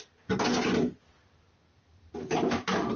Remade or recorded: recorded